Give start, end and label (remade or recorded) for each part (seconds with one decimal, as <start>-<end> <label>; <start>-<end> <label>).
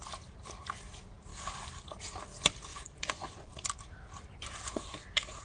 0.0-2.7 recorded; 2.7-3.5 remade; 3.5-4.3 recorded; 4.3-4.9 remade; 4.9-5.4 recorded